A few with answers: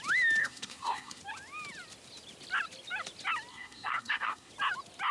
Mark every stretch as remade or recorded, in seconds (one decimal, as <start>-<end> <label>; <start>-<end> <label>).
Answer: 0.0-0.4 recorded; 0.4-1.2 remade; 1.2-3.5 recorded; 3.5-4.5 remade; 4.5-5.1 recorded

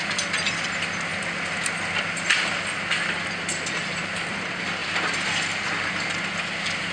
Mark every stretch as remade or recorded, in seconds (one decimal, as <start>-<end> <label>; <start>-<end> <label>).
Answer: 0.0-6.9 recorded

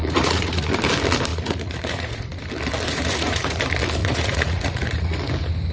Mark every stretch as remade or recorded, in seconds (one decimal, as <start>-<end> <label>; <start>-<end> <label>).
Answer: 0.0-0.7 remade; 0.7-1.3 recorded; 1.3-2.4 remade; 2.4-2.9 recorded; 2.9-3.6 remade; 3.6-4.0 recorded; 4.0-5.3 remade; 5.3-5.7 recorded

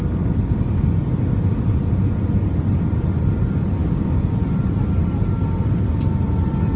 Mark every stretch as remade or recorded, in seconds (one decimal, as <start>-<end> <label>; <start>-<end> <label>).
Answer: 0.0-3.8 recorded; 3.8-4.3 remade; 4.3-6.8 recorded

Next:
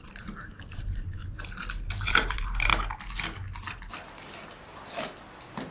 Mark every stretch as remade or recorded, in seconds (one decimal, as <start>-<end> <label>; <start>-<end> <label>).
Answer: 0.0-1.2 remade; 1.2-1.9 recorded; 1.9-2.7 remade; 2.7-5.7 recorded

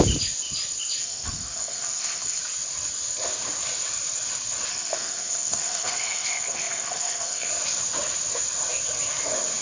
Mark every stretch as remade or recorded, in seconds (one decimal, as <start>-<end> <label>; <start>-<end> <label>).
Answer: 0.0-1.0 recorded; 1.0-2.4 remade; 2.4-4.7 recorded; 4.7-7.5 remade; 7.5-9.6 recorded

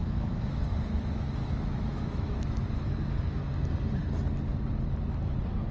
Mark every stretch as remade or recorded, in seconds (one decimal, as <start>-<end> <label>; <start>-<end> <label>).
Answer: 0.0-3.4 remade; 3.4-5.7 recorded